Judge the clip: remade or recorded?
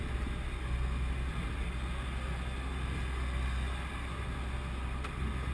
recorded